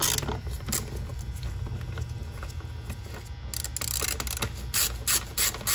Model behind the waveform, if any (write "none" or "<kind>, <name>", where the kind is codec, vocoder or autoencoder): none